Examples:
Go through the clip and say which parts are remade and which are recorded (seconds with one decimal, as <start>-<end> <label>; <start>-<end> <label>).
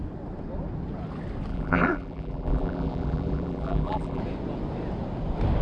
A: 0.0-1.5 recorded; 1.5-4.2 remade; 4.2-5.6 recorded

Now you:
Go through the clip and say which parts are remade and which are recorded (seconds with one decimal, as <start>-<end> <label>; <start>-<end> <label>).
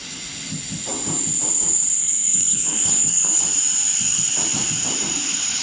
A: 0.0-2.0 recorded; 2.0-3.4 remade; 3.4-5.6 recorded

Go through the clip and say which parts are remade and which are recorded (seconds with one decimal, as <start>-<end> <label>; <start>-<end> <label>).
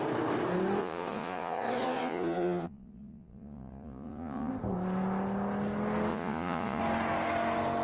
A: 0.0-0.8 recorded; 0.8-4.5 remade; 4.5-6.1 recorded; 6.1-6.8 remade; 6.8-7.8 recorded